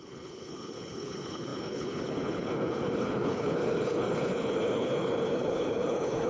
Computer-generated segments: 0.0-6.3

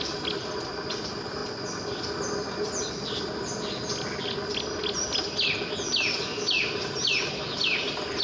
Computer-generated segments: none

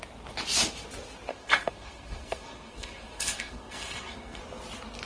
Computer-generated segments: 1.3-4.4

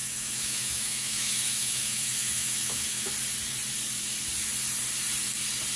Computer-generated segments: 0.0-3.1